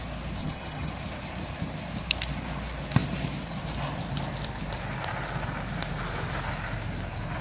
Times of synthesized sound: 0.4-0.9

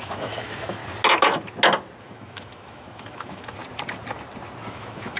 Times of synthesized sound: 0.0-0.8; 2.0-3.6; 4.7-5.2

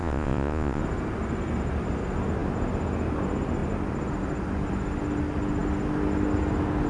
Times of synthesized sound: 0.0-0.8

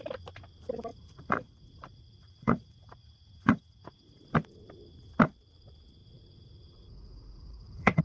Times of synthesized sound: 0.9-4.2; 6.0-8.0

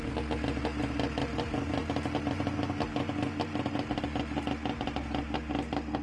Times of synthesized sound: none